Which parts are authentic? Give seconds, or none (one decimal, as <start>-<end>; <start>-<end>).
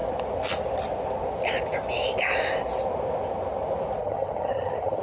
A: 0.0-4.0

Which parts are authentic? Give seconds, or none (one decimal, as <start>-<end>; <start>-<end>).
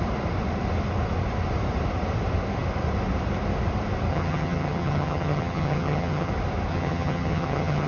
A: 0.0-4.1; 6.3-6.7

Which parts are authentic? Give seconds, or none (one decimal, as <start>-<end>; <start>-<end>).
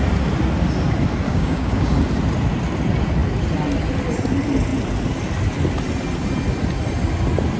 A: 0.0-1.3; 1.9-7.6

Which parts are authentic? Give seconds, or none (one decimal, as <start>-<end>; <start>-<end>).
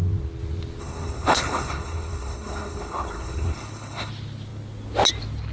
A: 0.0-0.8; 4.1-5.5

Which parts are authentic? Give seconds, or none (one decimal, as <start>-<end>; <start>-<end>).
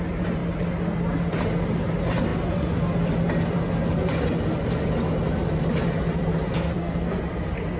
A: 0.0-6.5; 7.2-7.8